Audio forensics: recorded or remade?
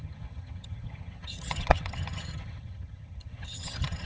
remade